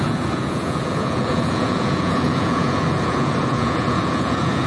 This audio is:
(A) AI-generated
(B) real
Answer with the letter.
A